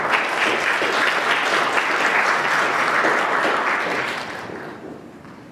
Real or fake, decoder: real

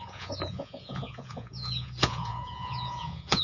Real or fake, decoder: fake, vocoder, Vocos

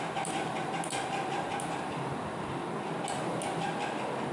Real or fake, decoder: real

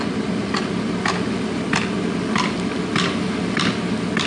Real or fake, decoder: real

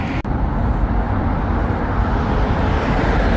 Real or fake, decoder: real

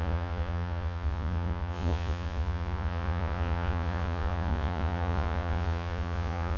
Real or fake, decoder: fake, vocoder, Vocos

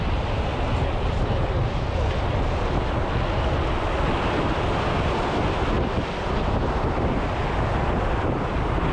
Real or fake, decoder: real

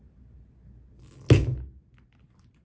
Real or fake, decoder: real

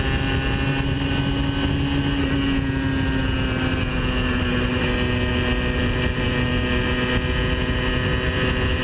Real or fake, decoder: real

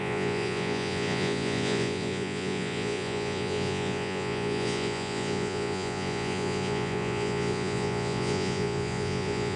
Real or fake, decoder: fake, vocoder, Vocos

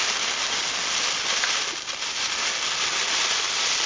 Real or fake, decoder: real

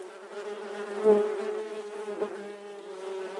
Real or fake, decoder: real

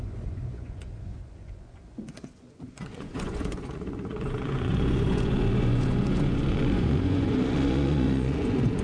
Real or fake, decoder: fake, vocoder, Vocos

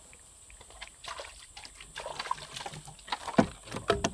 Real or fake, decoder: real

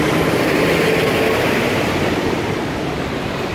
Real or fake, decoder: real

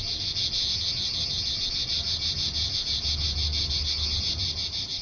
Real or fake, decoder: real